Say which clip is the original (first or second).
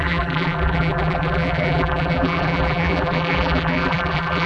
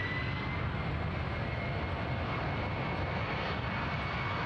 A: second